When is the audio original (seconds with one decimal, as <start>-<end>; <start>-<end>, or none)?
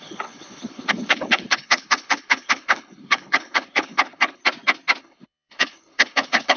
4.4-5.0